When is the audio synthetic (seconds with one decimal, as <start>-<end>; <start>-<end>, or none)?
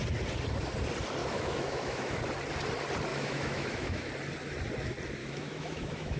1.2-2.2; 3.1-4.1; 5.2-6.2